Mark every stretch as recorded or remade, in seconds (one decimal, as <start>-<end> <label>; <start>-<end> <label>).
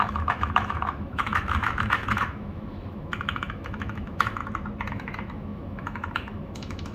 0.0-4.4 remade; 4.4-4.9 recorded; 4.9-6.9 remade